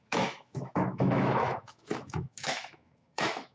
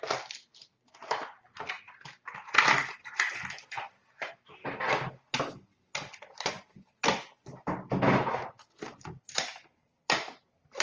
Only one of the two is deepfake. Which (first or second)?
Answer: first